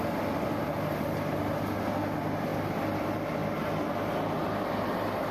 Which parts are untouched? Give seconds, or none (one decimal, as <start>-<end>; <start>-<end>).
0.0-2.5; 3.0-5.3